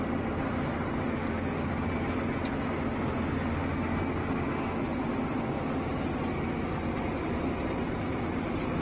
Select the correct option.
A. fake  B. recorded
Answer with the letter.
B